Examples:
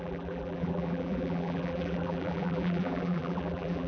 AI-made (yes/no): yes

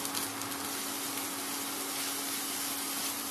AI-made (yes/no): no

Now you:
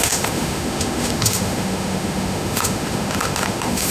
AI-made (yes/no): yes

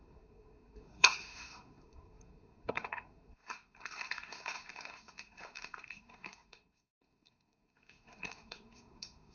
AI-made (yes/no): yes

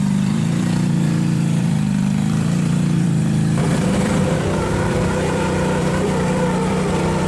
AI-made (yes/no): yes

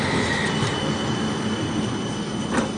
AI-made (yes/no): no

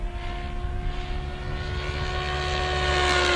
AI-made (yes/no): no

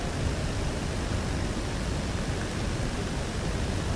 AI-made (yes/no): no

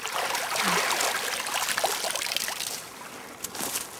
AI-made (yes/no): no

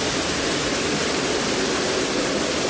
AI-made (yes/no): no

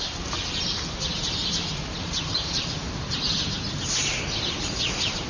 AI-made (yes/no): yes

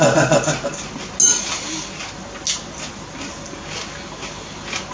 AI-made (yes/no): no